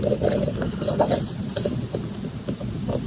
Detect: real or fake real